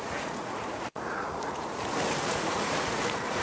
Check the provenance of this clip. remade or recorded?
remade